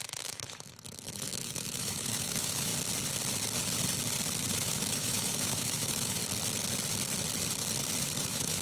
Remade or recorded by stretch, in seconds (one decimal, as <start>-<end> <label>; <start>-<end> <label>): 0.0-2.7 remade; 2.7-4.5 recorded; 4.5-6.2 remade; 6.2-8.2 recorded; 8.2-8.6 remade